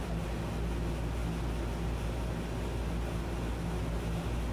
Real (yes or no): yes